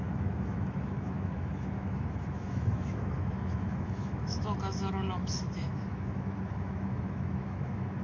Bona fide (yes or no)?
no